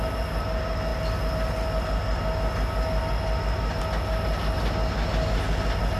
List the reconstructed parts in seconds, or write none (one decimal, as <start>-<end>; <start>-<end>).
none